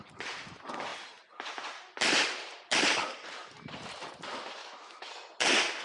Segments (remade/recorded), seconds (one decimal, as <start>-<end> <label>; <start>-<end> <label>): 0.0-4.6 recorded; 4.6-5.1 remade; 5.1-5.8 recorded